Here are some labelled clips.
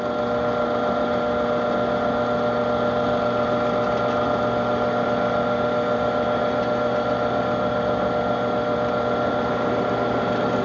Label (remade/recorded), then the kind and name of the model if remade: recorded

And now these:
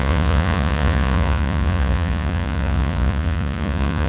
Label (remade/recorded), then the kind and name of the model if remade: remade, vocoder, Vocos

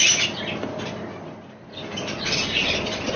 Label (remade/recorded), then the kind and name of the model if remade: recorded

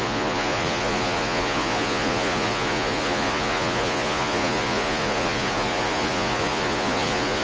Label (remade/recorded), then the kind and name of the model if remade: remade, vocoder, Vocos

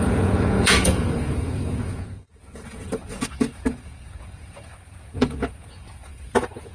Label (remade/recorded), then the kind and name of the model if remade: remade, vocoder, Vocos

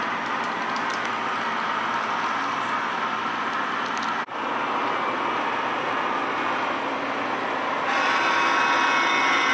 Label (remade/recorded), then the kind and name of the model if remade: recorded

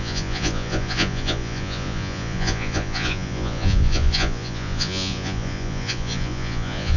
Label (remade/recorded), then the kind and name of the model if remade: remade, vocoder, Vocos